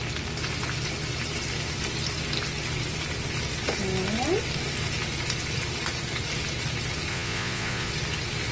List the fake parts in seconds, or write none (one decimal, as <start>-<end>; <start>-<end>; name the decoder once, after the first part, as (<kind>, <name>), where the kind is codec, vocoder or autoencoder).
7.1-7.9 (vocoder, Vocos)